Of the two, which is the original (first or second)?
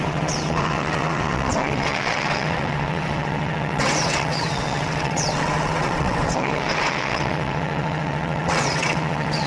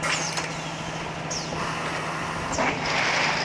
second